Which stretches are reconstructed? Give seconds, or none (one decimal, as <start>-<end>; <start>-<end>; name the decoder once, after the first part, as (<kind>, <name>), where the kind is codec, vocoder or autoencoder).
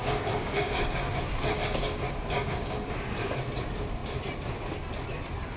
0.0-3.4 (codec, DAC)